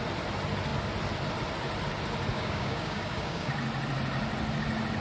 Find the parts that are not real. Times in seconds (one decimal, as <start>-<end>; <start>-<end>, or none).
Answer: 2.3-3.5